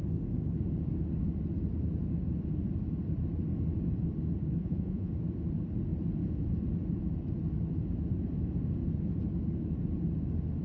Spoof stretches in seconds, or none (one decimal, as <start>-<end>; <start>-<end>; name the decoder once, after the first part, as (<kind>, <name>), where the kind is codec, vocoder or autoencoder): 4.6-5.1 (vocoder, Vocos)